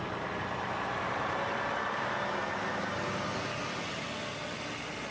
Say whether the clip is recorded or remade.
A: recorded